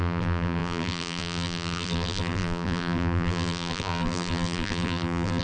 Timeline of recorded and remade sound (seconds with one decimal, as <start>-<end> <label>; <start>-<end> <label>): 0.0-5.4 remade